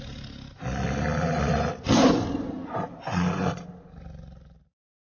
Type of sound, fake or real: real